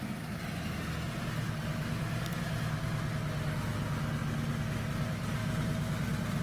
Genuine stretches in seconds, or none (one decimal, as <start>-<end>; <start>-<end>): 0.0-6.4